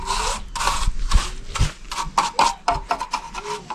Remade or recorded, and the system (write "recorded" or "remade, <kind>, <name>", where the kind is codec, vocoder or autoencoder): recorded